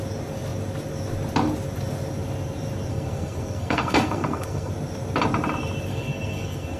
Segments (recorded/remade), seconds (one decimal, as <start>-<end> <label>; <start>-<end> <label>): 0.0-2.9 recorded; 2.9-4.7 remade; 4.7-5.9 recorded; 5.9-6.8 remade